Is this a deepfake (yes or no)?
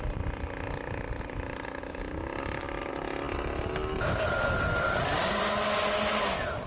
no